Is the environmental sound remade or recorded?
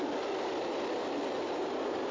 recorded